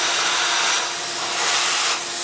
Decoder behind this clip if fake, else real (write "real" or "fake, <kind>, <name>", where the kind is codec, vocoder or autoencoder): real